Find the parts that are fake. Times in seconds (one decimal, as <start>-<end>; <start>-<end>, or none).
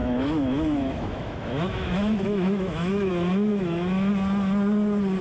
0.0-3.1; 3.5-4.1